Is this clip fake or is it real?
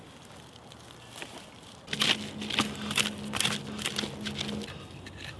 real